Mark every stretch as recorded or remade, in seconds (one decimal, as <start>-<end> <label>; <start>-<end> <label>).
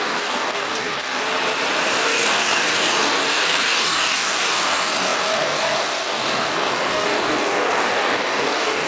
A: 0.0-1.2 remade; 1.2-2.0 recorded; 2.0-8.9 remade